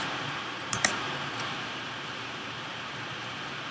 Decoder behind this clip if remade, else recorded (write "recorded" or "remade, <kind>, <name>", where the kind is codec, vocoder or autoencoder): remade, vocoder, BigVGAN v2